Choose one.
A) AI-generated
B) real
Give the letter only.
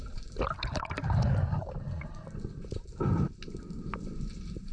B